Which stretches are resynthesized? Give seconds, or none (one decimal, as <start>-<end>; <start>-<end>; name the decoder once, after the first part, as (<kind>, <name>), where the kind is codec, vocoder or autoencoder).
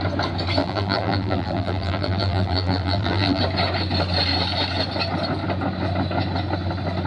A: 0.6-3.4 (vocoder, BigVGAN v2)